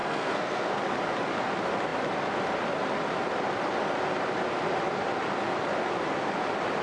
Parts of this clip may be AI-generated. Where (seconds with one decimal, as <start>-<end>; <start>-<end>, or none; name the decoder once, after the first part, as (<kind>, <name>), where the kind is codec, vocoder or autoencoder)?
0.0-0.8 (codec, SNAC)